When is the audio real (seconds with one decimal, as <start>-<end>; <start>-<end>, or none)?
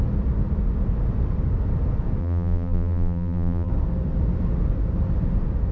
0.0-2.2; 3.7-5.7